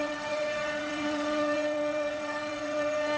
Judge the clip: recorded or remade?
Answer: remade